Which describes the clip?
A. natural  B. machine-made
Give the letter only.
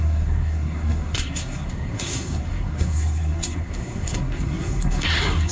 B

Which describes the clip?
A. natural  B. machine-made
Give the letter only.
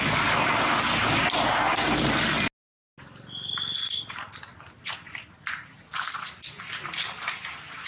A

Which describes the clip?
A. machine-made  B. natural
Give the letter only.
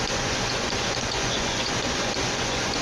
A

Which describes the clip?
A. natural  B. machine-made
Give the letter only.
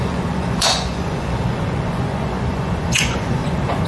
B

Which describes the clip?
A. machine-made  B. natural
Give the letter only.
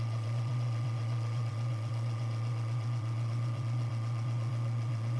A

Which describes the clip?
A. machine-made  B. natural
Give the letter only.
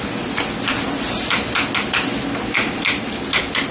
A